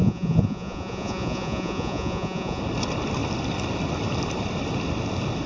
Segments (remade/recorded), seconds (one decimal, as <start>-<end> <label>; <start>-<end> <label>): 0.0-2.6 remade; 2.6-5.5 recorded